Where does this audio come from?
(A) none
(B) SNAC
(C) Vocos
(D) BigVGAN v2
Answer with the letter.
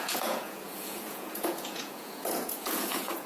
C